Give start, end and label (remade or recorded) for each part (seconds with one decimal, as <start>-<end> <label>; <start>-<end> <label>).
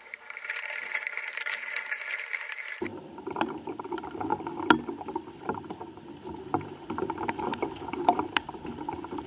0.0-4.3 remade; 4.3-5.4 recorded; 5.4-9.3 remade